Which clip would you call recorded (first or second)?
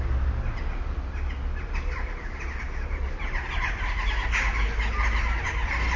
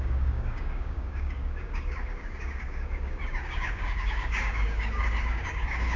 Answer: first